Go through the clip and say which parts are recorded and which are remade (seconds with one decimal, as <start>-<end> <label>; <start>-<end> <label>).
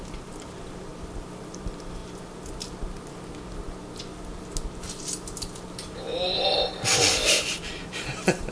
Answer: 0.0-0.9 remade; 0.9-1.4 recorded; 1.4-2.0 remade; 2.0-5.7 recorded; 5.7-8.5 remade